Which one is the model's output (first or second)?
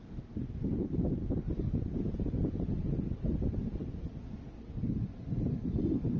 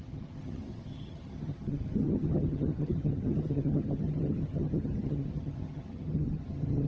second